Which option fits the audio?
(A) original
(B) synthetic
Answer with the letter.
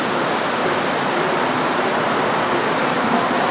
A